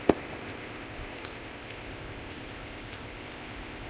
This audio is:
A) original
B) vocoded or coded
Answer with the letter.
B